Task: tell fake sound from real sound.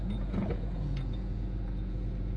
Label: fake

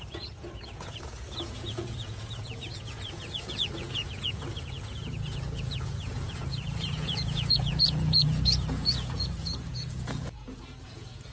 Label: fake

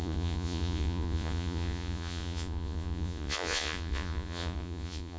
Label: fake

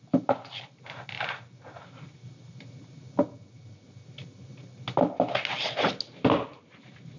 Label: real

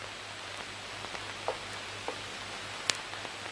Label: real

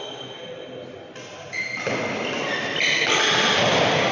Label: real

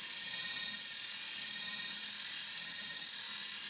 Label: real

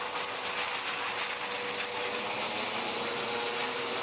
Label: real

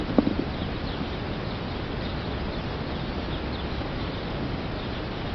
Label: real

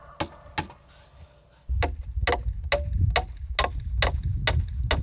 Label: real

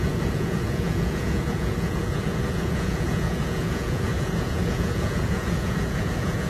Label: fake